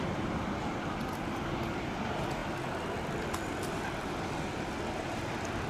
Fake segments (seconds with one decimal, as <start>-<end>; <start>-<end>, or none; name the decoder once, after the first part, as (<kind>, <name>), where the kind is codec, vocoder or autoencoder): 0.0-5.7 (vocoder, BigVGAN v2)